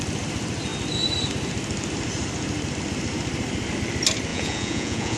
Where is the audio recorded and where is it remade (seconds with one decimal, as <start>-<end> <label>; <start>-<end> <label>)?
0.0-4.3 recorded; 4.3-5.2 remade